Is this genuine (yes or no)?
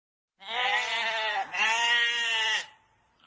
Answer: yes